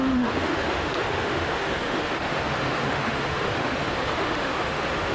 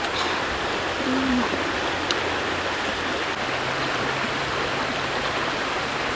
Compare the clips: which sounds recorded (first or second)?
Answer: second